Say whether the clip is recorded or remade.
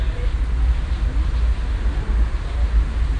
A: recorded